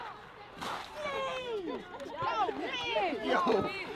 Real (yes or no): yes